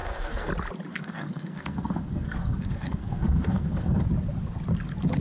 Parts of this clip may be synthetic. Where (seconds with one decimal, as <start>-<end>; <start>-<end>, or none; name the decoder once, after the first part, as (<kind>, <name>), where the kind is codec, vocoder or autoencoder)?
0.0-0.5 (codec, SNAC); 0.9-4.0